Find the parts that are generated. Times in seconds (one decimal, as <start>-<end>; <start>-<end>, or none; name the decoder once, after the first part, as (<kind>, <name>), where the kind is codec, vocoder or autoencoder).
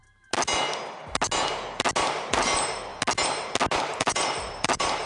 2.3-2.9 (vocoder, BigVGAN v2); 3.8-5.1